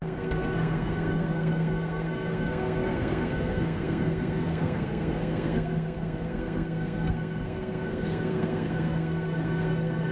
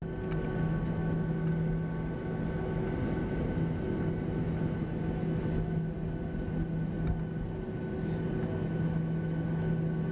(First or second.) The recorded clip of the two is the second